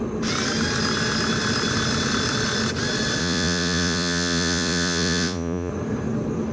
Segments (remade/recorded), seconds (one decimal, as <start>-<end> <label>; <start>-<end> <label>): 0.0-3.2 recorded; 3.2-5.7 remade; 5.7-6.5 recorded